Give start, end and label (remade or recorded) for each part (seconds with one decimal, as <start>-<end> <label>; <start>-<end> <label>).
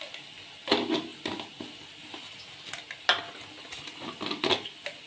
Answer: 0.0-5.1 recorded